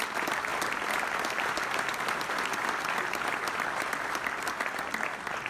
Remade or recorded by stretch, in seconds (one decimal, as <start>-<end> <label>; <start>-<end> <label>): 0.0-5.5 recorded